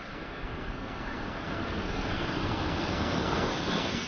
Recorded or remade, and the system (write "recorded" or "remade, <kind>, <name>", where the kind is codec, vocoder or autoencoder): remade, codec, SNAC